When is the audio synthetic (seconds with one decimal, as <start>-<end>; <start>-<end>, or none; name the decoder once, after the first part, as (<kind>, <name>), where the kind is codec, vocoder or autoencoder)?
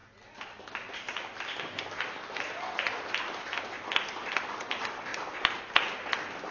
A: none